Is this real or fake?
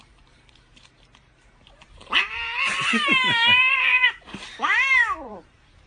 fake